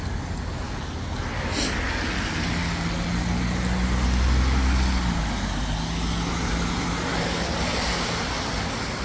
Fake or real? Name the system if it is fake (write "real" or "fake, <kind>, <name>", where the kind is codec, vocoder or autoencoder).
real